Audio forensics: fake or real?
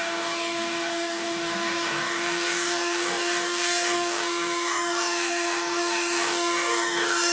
fake